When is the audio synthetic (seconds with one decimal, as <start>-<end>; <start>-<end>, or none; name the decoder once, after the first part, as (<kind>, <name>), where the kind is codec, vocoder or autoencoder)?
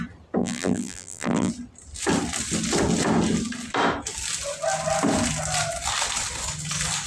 0.4-1.5 (vocoder, BigVGAN v2)